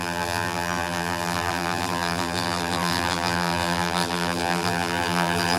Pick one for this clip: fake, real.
fake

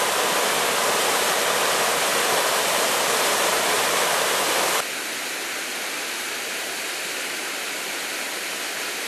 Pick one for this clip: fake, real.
real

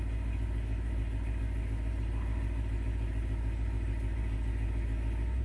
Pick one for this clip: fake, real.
real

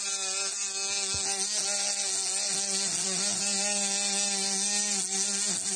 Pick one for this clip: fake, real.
real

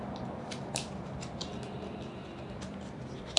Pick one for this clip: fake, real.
fake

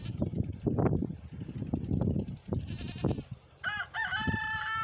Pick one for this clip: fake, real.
fake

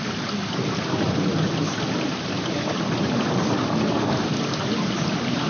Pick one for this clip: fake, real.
real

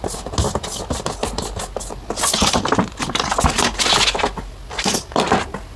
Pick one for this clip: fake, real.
real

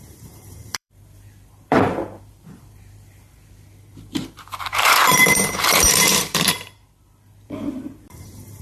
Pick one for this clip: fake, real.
fake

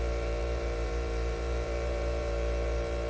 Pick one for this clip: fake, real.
fake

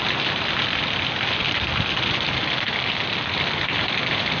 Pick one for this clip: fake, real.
fake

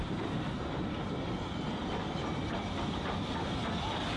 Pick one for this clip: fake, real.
real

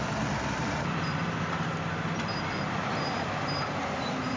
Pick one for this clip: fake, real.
fake